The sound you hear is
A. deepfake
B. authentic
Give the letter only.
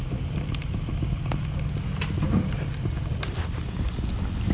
B